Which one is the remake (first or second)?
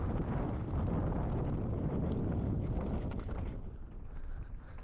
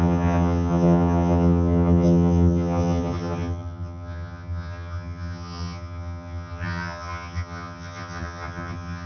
second